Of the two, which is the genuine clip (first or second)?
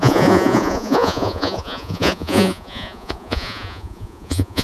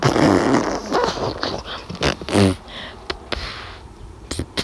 second